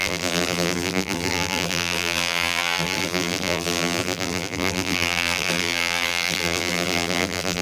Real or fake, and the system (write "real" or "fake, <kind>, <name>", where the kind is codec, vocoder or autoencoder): fake, vocoder, BigVGAN v2